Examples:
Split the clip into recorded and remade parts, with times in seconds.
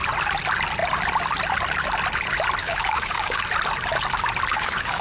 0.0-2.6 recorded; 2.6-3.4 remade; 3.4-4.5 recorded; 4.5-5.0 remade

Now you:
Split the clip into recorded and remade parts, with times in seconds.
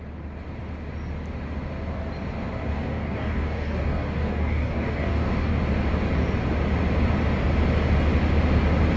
0.0-2.7 recorded; 2.7-5.6 remade; 5.6-9.0 recorded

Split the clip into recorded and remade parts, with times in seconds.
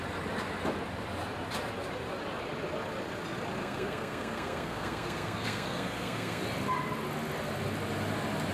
0.0-3.6 recorded; 3.6-6.4 remade; 6.4-8.5 recorded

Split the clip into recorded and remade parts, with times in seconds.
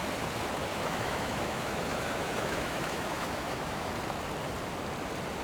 0.0-0.7 recorded; 0.7-3.9 remade; 3.9-5.4 recorded